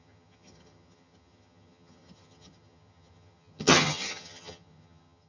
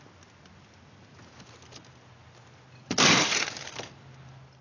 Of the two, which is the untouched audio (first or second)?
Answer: second